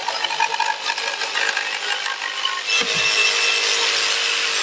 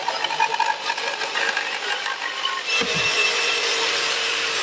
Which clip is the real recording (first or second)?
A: first